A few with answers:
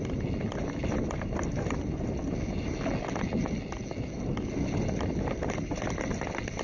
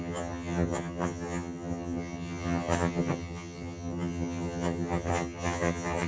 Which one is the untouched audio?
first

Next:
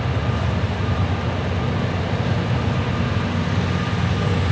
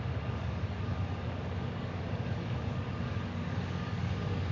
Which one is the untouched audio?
first